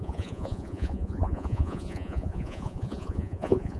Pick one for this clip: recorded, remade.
remade